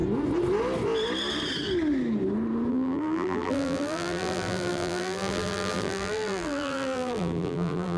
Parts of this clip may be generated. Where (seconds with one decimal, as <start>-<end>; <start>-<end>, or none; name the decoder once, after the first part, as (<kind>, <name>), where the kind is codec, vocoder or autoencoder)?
2.7-8.0 (vocoder, BigVGAN v2)